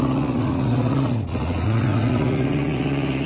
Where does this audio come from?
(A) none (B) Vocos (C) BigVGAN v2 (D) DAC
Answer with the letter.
B